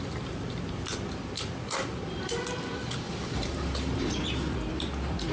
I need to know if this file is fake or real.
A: fake